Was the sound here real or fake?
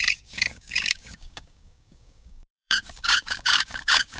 fake